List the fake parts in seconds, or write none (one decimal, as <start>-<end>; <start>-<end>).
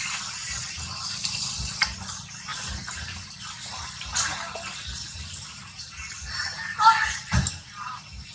none